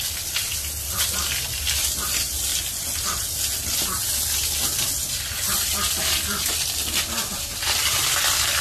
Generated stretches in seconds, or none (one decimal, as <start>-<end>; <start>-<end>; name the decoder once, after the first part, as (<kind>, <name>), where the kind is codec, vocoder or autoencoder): 0.0-0.5 (vocoder, BigVGAN v2); 1.4-2.5; 5.9-8.6